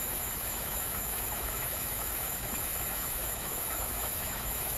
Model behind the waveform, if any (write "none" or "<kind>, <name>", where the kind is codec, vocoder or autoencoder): autoencoder, DAC-VAE